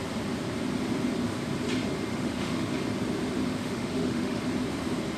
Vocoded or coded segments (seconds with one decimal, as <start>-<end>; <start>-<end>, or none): 2.1-2.7; 3.6-4.4